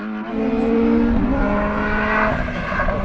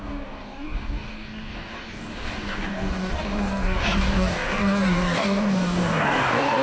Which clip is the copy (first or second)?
second